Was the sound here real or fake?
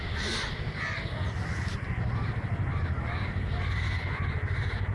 fake